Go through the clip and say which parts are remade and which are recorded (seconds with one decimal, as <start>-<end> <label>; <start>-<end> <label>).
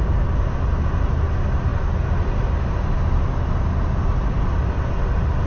0.0-5.5 recorded